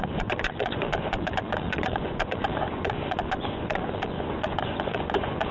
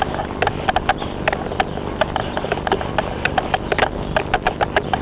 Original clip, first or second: second